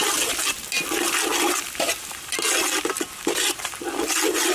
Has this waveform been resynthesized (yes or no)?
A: no